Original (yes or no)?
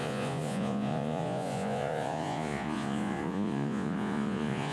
no